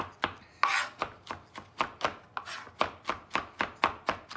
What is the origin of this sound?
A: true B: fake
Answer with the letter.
A